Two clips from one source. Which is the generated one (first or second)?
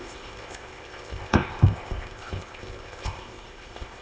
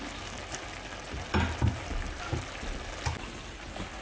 first